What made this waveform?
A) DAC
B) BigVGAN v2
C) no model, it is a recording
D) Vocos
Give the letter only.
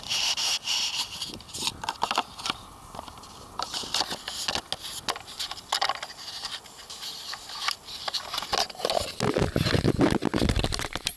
C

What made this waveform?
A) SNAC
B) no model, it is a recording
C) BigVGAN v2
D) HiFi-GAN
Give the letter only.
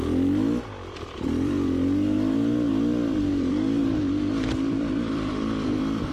C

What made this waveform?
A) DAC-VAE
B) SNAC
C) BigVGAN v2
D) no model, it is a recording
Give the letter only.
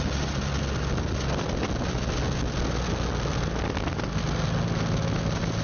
D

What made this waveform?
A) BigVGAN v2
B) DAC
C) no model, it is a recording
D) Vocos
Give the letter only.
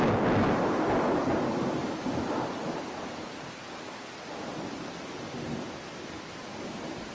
C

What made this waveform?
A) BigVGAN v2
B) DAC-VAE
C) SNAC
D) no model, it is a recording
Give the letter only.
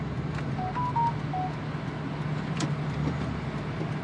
D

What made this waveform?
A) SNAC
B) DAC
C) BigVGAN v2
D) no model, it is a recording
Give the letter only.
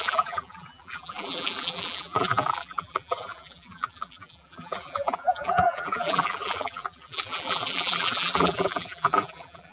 C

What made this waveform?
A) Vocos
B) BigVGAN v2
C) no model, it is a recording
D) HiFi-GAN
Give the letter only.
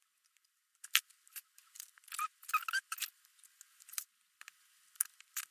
C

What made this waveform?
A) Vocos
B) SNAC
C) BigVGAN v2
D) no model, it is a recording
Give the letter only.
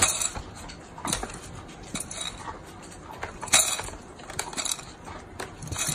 C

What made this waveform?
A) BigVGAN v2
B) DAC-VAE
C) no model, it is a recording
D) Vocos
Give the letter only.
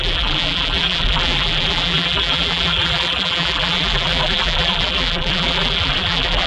A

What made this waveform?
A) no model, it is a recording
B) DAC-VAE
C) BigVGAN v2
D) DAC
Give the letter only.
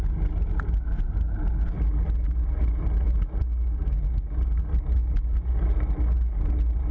A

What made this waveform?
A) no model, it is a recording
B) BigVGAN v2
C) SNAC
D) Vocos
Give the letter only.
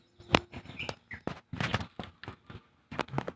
A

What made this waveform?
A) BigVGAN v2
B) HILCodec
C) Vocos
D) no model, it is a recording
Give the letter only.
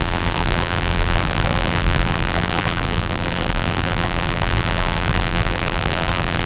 A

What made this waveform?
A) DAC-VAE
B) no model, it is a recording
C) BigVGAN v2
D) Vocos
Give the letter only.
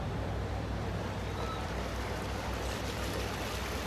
C